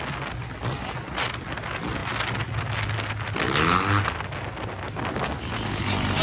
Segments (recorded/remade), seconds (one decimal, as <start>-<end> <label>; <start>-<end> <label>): 0.0-6.2 recorded